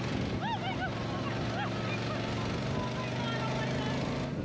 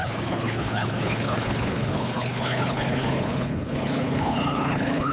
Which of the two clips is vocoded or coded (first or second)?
second